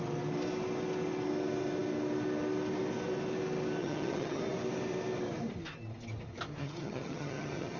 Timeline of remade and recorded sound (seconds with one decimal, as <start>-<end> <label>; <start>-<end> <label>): 0.0-3.8 recorded; 3.8-4.4 remade; 4.4-6.6 recorded; 6.6-7.8 remade